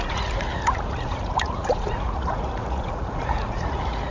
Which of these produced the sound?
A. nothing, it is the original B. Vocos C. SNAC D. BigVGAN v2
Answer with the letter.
B